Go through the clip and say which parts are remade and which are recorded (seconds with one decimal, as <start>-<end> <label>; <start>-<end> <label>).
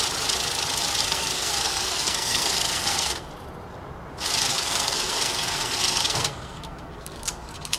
0.0-1.0 recorded; 1.0-3.3 remade; 3.3-4.5 recorded; 4.5-7.8 remade